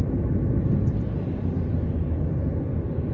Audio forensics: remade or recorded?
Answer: recorded